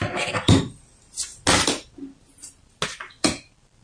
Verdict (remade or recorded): recorded